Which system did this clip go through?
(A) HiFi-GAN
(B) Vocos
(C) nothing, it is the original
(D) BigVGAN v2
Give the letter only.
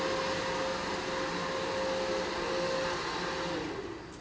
C